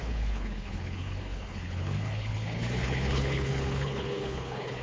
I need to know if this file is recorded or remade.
remade